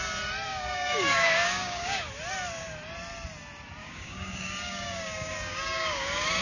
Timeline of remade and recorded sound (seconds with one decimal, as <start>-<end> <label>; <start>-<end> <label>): 0.0-0.5 recorded; 0.5-2.1 remade; 2.1-3.8 recorded; 3.8-6.4 remade

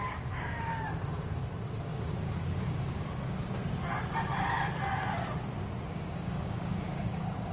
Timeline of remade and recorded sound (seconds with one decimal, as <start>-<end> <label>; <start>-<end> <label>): 0.0-0.7 remade; 0.7-1.8 recorded; 1.8-3.6 remade; 3.6-5.9 recorded; 5.9-7.5 remade

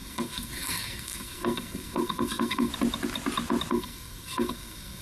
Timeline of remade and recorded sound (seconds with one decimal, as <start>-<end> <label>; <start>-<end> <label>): 0.0-2.7 remade; 2.7-3.7 recorded; 3.7-5.0 remade

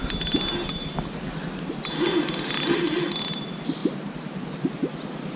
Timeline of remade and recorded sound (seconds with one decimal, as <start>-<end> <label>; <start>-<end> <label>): 0.0-3.8 recorded; 3.8-4.5 remade; 4.5-5.4 recorded

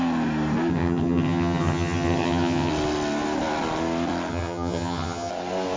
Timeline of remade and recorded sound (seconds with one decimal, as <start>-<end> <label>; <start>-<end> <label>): 0.0-0.7 recorded; 0.7-2.7 remade; 2.7-4.3 recorded; 4.3-5.3 remade; 5.3-5.8 recorded

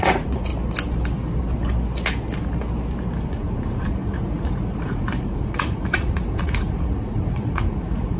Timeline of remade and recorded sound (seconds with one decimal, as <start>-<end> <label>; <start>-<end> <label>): 0.0-0.5 remade; 0.5-3.3 recorded; 3.3-8.2 remade